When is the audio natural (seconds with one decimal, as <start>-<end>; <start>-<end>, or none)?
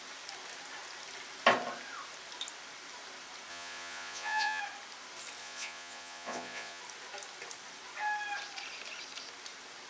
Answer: 0.0-3.5; 4.6-5.4; 6.8-9.9